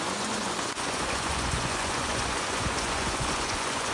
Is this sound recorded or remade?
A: remade